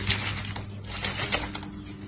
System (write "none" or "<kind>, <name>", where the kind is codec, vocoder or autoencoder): none